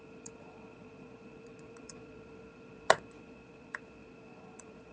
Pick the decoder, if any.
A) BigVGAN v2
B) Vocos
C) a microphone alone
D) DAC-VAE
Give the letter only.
B